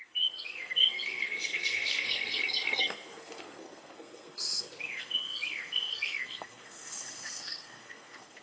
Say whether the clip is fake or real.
fake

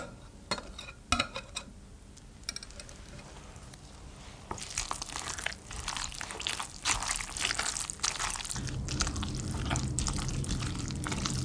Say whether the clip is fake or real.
real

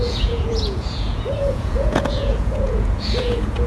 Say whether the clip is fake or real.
fake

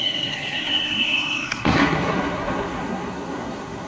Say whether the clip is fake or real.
fake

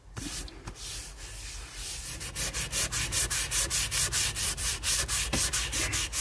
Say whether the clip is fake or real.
real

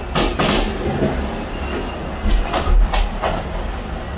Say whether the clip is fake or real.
real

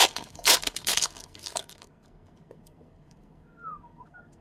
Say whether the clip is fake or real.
fake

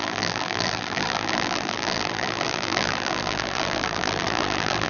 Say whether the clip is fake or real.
fake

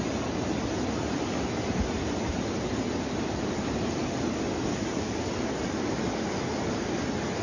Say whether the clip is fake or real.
real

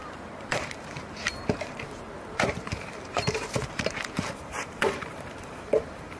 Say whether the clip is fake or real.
fake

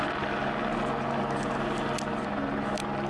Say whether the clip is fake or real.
real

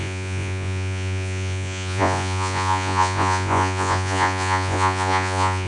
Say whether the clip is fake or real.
fake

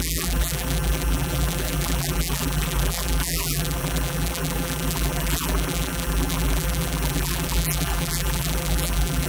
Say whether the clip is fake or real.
fake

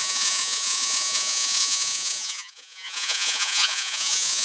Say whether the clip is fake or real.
fake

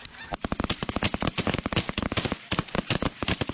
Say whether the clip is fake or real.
real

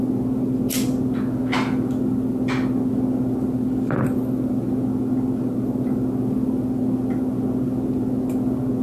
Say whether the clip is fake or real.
real